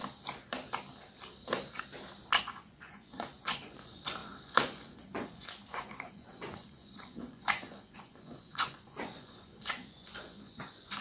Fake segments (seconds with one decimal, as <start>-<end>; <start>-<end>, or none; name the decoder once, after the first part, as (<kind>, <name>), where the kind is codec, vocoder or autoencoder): 2.4-11.0 (vocoder, Vocos)